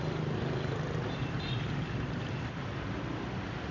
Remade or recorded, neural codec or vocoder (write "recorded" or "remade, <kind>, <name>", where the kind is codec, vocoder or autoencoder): recorded